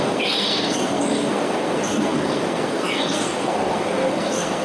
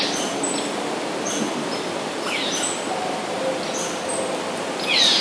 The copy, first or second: first